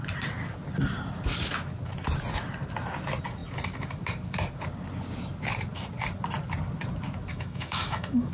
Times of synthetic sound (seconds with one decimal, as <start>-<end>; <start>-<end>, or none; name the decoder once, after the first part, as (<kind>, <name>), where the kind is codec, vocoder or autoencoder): 7.3-8.3 (autoencoder, DAC-VAE)